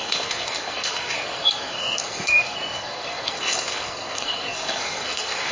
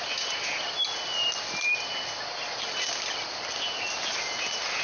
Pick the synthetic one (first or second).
first